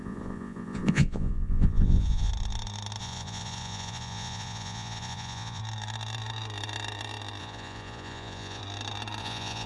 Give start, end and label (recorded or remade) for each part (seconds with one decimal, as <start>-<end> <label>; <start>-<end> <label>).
0.0-2.3 remade; 2.3-3.0 recorded; 3.0-5.6 remade; 5.6-7.4 recorded; 7.4-8.6 remade; 8.6-9.2 recorded; 9.2-9.7 remade